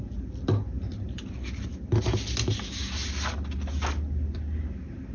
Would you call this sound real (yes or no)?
yes